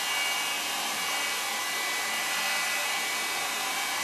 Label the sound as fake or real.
real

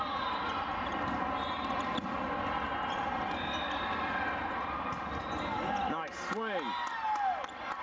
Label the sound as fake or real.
real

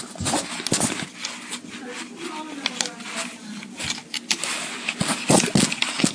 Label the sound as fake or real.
real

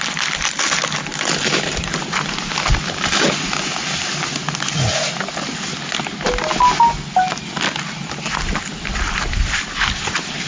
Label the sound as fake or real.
real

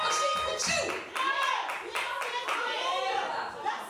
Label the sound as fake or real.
real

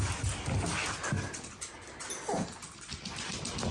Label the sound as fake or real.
real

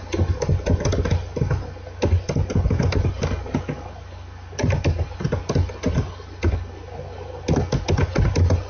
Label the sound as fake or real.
real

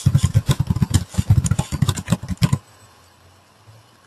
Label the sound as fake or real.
real